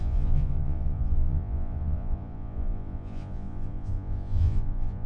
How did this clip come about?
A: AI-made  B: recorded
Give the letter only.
A